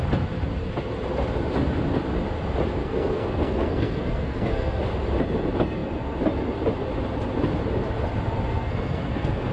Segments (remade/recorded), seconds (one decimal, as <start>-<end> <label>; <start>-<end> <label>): 0.0-2.8 recorded; 2.8-4.8 remade; 4.8-8.5 recorded; 8.5-9.5 remade